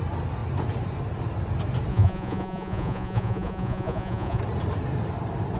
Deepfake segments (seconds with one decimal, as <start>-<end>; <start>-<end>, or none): 1.9-4.4